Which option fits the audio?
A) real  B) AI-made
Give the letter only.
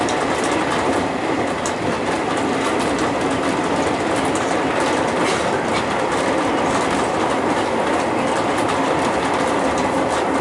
A